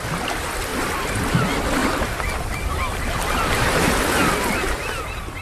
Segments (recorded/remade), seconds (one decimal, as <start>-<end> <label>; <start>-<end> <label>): 0.0-5.4 recorded